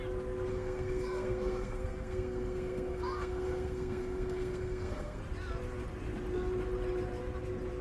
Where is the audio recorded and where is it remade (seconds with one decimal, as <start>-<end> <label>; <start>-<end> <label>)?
0.0-0.5 recorded; 0.5-5.2 remade; 5.2-7.8 recorded